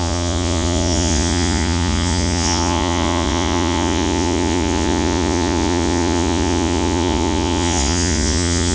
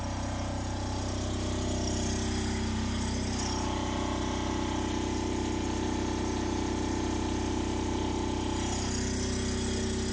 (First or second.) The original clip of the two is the second